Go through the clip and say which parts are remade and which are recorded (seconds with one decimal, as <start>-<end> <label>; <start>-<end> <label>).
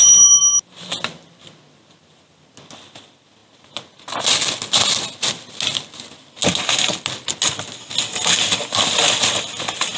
0.0-10.0 recorded